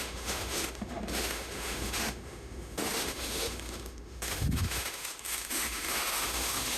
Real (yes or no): no